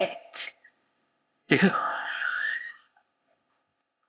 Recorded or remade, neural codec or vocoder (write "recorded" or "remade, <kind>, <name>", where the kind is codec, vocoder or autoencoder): remade, codec, ZipCodec